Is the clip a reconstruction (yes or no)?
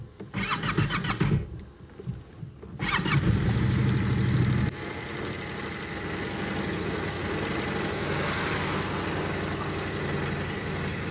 no